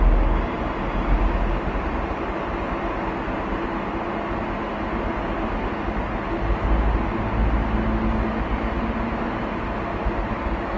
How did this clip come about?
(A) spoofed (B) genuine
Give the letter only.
B